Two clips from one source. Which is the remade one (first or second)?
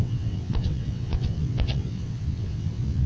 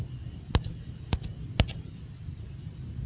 first